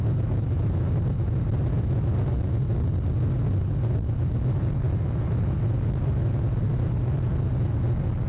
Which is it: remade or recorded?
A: recorded